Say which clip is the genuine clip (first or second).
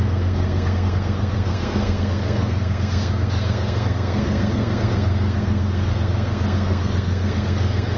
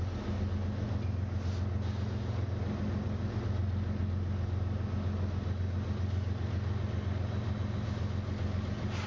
second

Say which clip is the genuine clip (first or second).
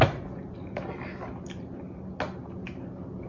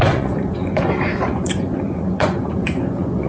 first